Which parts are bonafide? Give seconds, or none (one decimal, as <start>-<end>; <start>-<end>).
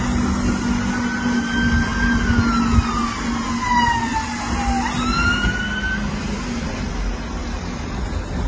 0.0-8.5